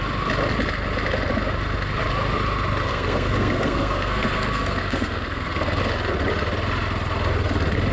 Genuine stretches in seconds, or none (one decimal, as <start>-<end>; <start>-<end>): 0.0-2.9; 5.8-7.9